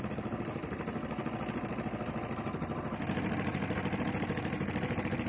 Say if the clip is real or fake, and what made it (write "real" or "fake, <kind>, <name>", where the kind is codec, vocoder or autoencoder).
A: real